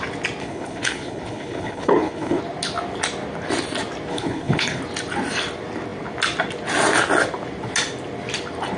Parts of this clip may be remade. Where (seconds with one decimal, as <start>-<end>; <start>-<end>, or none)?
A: 0.4-2.4; 4.1-4.8